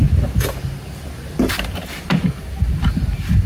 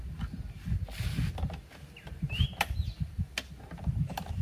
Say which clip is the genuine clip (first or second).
second